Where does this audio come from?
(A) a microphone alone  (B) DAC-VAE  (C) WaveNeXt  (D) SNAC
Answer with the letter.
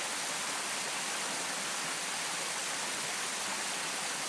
A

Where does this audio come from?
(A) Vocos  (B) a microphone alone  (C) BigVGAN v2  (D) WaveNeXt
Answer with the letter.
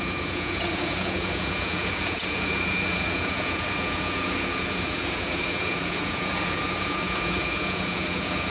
A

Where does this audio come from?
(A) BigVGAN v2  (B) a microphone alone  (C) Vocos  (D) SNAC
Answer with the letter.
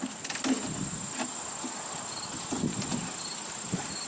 B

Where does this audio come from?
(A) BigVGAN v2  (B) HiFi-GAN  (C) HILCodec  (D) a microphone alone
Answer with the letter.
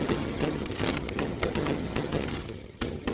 B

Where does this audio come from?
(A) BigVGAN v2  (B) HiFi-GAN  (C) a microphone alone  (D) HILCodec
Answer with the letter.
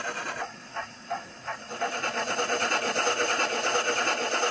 C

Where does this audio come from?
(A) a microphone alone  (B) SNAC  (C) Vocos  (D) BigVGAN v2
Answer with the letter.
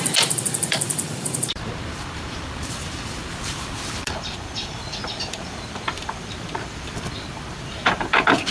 D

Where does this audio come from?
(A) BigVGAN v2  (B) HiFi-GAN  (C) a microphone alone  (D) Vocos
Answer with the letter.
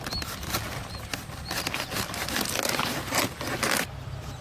C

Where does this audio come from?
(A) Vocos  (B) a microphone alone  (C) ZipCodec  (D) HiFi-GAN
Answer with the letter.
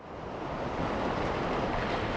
B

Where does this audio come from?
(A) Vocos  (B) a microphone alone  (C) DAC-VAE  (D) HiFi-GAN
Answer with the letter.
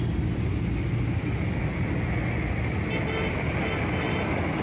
B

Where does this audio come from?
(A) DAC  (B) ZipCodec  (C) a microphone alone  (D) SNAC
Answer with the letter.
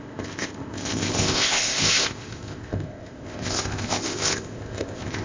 B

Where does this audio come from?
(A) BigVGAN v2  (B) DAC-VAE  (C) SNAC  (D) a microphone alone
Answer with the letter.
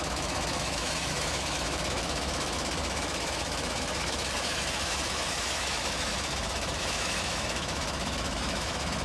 B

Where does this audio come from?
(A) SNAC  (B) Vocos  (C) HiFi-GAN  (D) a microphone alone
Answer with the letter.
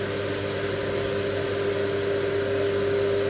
D